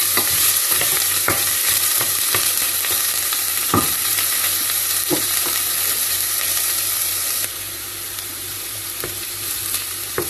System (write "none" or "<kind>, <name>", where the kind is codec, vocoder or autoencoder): vocoder, BigVGAN v2